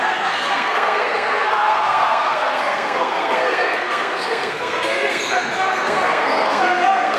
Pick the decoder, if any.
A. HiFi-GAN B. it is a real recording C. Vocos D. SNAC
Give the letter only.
D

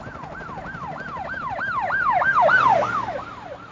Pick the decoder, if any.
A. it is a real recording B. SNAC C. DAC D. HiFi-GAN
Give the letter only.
A